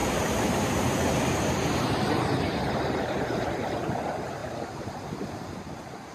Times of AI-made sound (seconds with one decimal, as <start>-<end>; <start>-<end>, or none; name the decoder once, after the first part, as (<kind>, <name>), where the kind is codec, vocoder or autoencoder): 0.0-3.7 (vocoder, BigVGAN v2); 4.4-5.0